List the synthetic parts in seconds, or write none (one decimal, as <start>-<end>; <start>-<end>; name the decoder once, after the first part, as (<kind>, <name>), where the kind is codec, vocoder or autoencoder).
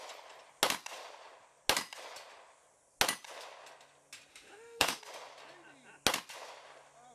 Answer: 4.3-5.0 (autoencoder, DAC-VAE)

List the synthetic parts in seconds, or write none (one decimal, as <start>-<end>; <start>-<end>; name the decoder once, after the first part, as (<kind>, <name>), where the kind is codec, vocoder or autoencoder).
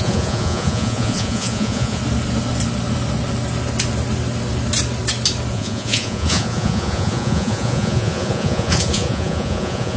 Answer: 0.0-2.0 (vocoder, Vocos); 5.5-10.0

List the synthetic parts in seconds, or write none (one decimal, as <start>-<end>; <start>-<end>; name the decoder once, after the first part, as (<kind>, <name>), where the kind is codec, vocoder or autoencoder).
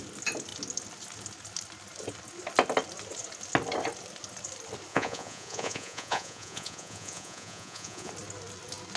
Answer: 4.9-8.1 (vocoder, Vocos)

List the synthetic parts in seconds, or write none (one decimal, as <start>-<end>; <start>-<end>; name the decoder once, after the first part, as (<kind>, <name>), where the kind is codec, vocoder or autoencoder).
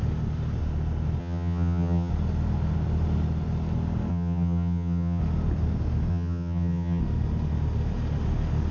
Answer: 1.2-2.1 (vocoder, HiFi-GAN); 4.1-5.2; 6.1-7.0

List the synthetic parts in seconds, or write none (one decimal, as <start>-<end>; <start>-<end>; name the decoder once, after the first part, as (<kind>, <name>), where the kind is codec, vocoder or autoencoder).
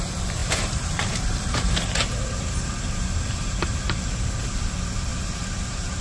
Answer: 0.4-4.0 (vocoder, BigVGAN v2); 5.1-6.0